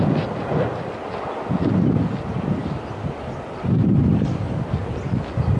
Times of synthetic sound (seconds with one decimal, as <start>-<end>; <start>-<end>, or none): none